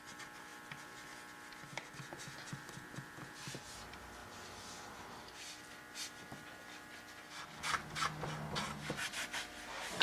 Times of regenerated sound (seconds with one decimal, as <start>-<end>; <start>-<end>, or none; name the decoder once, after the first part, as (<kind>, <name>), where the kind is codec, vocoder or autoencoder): none